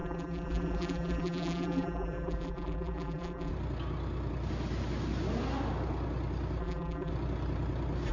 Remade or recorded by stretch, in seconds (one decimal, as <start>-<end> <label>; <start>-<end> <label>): 0.0-3.5 remade; 3.5-6.6 recorded; 6.6-7.1 remade; 7.1-8.1 recorded